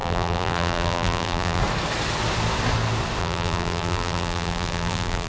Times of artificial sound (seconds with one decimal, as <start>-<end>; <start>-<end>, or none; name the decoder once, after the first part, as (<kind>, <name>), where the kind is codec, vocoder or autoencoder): 0.0-1.6 (vocoder, BigVGAN v2); 3.2-5.3